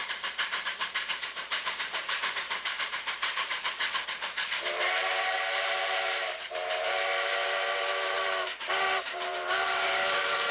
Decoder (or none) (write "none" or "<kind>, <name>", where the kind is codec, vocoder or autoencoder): vocoder, BigVGAN v2